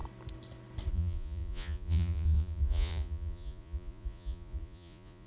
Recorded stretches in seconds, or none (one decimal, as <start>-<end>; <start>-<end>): 0.0-0.9